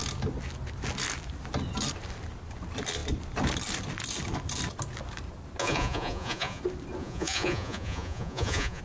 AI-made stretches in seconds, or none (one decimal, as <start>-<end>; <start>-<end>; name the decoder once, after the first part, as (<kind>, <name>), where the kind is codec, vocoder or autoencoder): 5.6-6.6 (vocoder, Vocos); 7.0-8.8